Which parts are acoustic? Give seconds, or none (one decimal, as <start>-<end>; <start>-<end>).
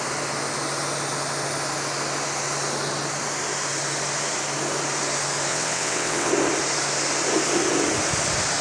0.0-5.5; 6.3-8.6